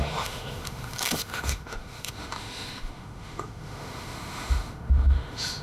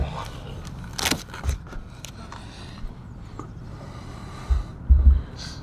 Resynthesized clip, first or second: first